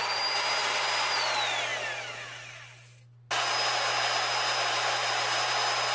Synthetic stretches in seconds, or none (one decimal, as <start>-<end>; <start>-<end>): none